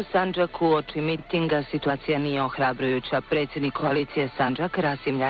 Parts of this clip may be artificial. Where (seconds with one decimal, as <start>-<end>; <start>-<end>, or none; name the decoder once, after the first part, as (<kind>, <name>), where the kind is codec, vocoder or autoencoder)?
3.8-4.5 (vocoder, BigVGAN v2)